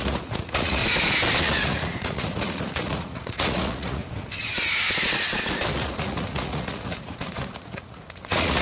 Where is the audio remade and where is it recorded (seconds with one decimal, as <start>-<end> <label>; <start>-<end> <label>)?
0.0-0.8 remade; 0.8-1.4 recorded; 1.4-4.0 remade; 4.0-5.7 recorded; 5.7-8.6 remade